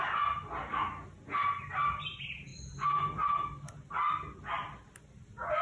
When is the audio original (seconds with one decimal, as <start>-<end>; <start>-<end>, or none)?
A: 0.0-5.6